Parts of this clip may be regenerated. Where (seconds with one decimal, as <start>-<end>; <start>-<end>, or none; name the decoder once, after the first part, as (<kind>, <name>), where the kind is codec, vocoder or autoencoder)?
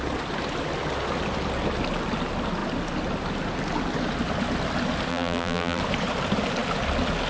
5.1-5.8 (vocoder, BigVGAN v2)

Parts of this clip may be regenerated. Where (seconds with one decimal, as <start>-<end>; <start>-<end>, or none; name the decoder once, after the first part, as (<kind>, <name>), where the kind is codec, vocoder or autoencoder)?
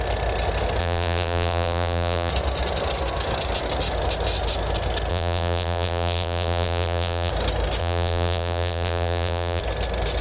0.8-2.3 (vocoder, BigVGAN v2); 5.1-7.3; 7.8-9.6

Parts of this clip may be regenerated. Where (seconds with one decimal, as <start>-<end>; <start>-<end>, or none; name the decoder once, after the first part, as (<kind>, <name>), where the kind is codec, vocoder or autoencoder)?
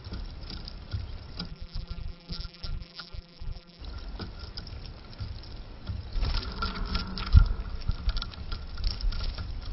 1.5-3.8 (vocoder, BigVGAN v2)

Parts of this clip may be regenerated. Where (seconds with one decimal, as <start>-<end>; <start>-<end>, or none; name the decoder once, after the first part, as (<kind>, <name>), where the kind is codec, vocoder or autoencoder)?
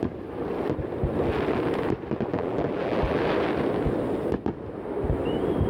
2.3-3.2 (vocoder, BigVGAN v2)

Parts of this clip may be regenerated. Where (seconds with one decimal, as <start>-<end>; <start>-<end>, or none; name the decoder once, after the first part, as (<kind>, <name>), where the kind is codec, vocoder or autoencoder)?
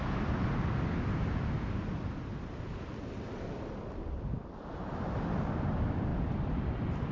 none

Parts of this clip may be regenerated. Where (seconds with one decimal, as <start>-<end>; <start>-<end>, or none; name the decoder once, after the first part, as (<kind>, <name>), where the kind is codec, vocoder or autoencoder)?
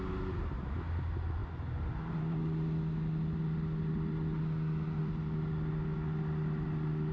none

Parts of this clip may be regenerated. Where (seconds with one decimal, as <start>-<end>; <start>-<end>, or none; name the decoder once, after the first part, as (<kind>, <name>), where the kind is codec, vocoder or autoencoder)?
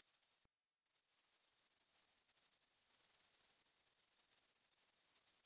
0.0-2.7 (vocoder, BigVGAN v2); 3.6-5.5